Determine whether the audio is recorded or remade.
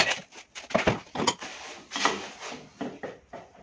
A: recorded